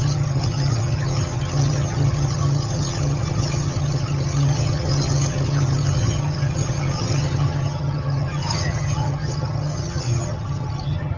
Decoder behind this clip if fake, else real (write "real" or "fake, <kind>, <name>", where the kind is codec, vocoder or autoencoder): fake, vocoder, HiFi-GAN